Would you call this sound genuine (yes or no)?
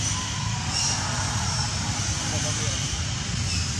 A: yes